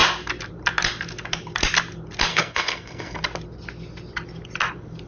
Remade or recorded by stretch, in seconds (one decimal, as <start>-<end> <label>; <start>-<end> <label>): 0.0-2.3 recorded; 2.3-3.2 remade; 3.2-5.1 recorded